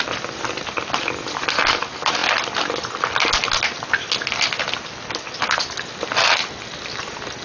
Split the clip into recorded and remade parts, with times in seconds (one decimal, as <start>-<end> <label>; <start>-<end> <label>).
0.0-7.4 recorded